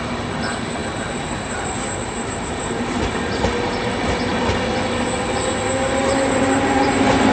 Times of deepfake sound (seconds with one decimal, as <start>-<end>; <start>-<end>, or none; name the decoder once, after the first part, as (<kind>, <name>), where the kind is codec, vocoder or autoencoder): 0.0-4.3 (vocoder, BigVGAN v2); 6.0-7.3